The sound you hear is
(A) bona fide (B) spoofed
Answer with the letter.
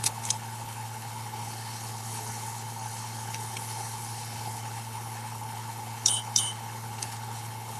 B